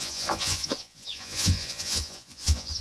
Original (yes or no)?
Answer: no